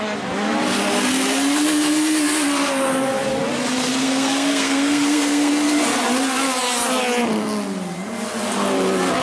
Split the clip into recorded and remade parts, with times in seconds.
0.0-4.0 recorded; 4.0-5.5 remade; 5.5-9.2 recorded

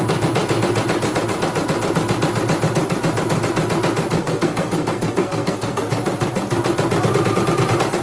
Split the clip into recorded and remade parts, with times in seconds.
0.0-4.2 recorded; 4.2-5.8 remade; 5.8-8.0 recorded

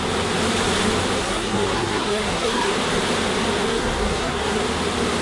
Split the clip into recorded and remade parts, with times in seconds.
0.0-1.2 recorded; 1.2-2.7 remade; 2.7-3.7 recorded; 3.7-4.6 remade; 4.6-5.2 recorded

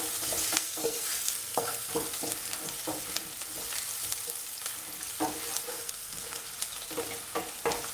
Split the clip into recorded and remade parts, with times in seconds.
0.0-0.5 recorded; 0.5-1.9 remade; 1.9-5.7 recorded; 5.7-6.5 remade; 6.5-7.9 recorded

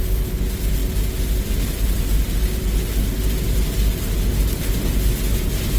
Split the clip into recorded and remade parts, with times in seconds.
0.0-5.8 recorded

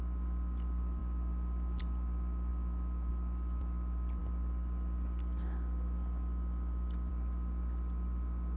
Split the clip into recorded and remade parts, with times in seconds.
0.0-8.6 recorded

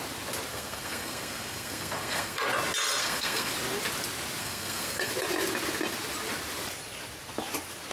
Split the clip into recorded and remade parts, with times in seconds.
0.0-0.5 recorded; 0.5-2.4 remade; 2.4-3.0 recorded; 3.0-3.5 remade; 3.5-4.4 recorded; 4.4-5.1 remade; 5.1-7.9 recorded

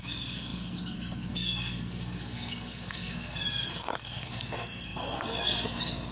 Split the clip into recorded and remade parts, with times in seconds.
0.0-6.1 remade